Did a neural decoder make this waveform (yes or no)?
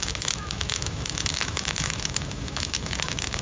yes